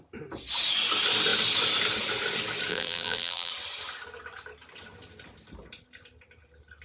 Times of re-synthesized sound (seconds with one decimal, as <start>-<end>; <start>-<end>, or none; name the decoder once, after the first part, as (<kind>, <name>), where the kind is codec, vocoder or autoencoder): 2.7-3.5 (vocoder, BigVGAN v2)